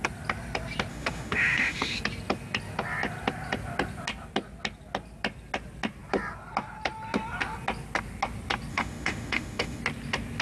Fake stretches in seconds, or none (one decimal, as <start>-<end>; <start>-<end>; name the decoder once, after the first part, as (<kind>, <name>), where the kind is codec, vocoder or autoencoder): 0.9-2.0 (autoencoder, DAC-VAE); 8.7-9.8